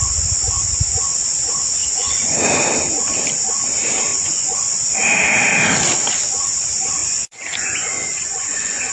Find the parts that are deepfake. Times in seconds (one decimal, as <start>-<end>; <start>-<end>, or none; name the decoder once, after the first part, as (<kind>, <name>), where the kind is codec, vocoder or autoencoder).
1.8-2.6 (vocoder, Vocos); 4.1-4.7; 7.0-8.9

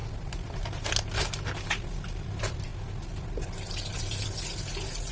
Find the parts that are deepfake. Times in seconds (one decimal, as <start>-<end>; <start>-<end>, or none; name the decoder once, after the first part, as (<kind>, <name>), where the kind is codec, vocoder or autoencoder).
none

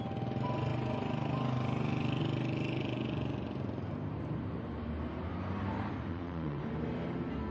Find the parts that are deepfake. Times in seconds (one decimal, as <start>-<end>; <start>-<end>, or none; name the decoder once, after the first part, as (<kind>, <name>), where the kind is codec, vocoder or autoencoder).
6.1-6.6 (vocoder, Vocos)

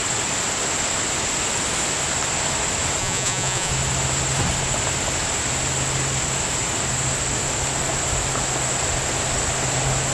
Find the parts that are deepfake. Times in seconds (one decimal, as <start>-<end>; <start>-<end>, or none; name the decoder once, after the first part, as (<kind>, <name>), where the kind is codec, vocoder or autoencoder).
3.0-3.7 (vocoder, Vocos)

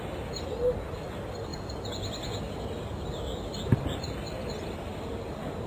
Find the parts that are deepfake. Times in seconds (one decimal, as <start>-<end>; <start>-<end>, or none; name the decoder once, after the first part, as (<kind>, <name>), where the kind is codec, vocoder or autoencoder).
none

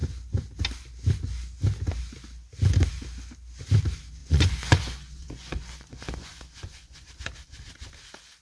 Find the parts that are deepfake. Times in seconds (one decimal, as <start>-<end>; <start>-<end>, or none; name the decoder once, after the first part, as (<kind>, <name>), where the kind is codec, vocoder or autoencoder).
4.2-7.1 (vocoder, Vocos)

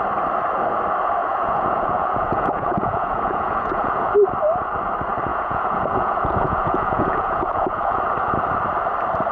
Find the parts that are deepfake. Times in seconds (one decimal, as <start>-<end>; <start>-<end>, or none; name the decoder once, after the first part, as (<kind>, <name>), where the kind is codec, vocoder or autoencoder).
1.2-4.1 (vocoder, Vocos); 5.3-8.0